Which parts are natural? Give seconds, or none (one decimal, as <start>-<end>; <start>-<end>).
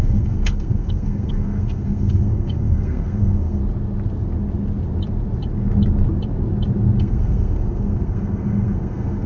3.6-7.0